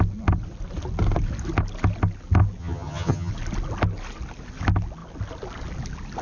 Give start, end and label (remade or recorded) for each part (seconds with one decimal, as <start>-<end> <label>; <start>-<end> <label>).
0.0-2.6 recorded; 2.6-3.3 remade; 3.3-6.2 recorded